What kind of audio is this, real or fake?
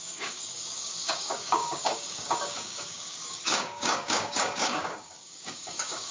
fake